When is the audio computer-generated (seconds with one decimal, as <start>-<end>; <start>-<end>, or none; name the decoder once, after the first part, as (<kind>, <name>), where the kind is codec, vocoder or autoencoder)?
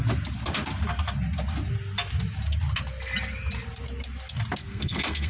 4.6-5.3 (codec, SNAC)